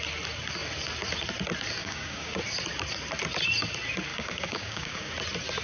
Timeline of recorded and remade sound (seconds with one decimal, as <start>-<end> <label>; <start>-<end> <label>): 0.0-1.8 recorded; 1.8-2.4 remade; 2.4-4.1 recorded; 4.1-5.1 remade; 5.1-5.6 recorded